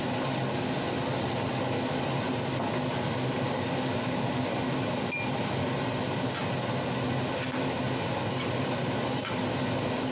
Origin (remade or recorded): recorded